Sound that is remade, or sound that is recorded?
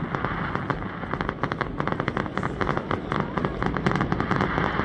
recorded